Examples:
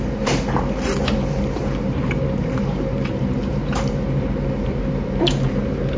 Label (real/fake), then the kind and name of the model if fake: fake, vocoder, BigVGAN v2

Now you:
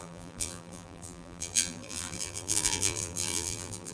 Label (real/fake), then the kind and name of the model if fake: fake, vocoder, BigVGAN v2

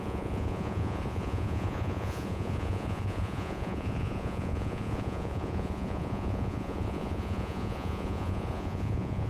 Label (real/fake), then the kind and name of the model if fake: fake, vocoder, Vocos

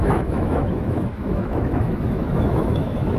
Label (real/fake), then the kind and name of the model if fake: fake, autoencoder, DAC-VAE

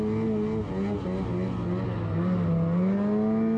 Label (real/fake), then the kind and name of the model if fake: real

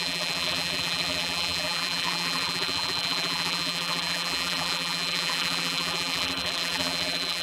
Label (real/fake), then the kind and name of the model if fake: fake, vocoder, BigVGAN v2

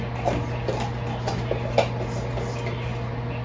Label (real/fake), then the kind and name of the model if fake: real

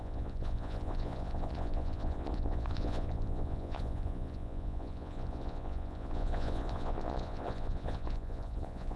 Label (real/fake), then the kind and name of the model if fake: fake, vocoder, Vocos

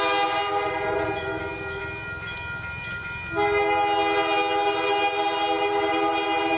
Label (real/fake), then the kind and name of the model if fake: real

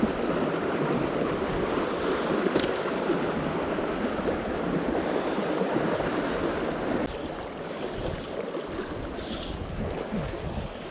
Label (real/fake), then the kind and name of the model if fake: real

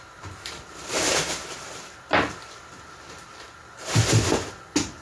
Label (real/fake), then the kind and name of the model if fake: real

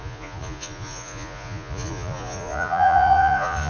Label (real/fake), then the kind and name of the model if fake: fake, vocoder, Vocos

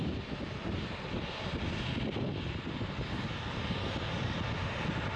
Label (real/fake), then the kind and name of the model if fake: real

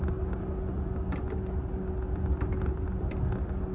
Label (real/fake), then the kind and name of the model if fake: real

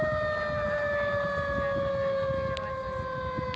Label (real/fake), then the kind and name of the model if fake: real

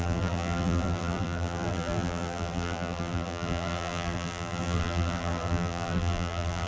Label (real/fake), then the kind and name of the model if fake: fake, vocoder, BigVGAN v2